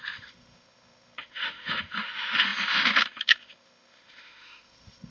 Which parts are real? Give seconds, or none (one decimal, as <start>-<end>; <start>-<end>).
none